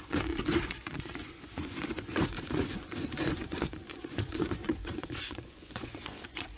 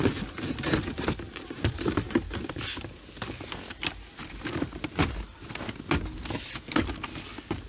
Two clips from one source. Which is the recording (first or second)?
second